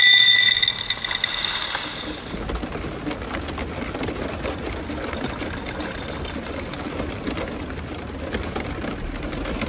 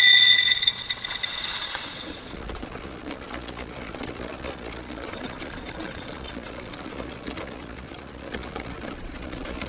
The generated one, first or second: second